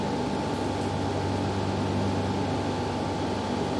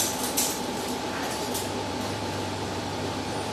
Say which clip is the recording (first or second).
first